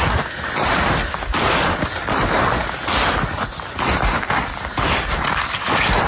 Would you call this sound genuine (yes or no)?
yes